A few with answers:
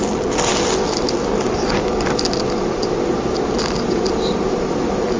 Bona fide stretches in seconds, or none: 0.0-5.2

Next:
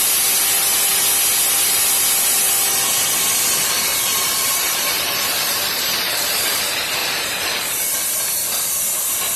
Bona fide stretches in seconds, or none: 0.0-3.9; 6.6-7.0; 7.6-9.4